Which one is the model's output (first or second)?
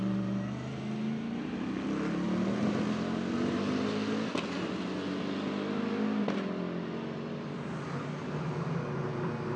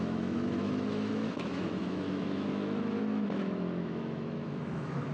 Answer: second